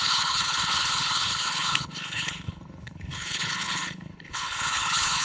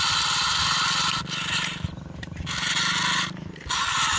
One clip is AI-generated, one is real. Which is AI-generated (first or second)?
first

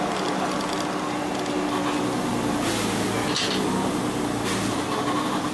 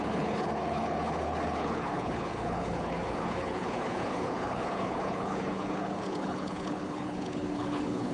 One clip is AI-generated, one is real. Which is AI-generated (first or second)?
second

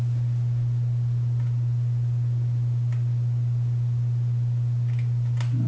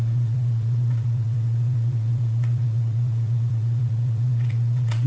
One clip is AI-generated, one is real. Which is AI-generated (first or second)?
second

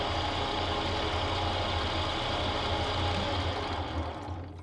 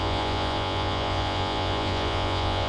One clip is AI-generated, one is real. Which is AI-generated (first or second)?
second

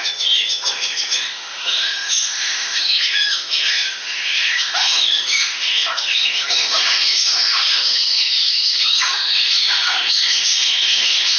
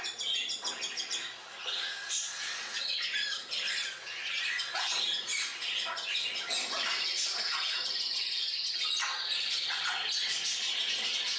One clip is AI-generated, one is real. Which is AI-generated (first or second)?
first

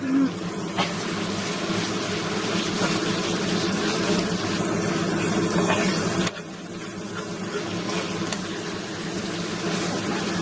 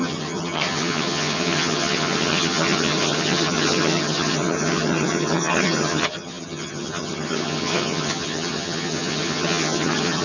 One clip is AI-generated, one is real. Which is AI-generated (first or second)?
second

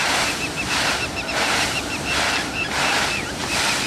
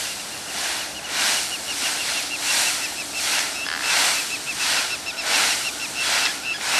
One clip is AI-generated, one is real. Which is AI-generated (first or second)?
first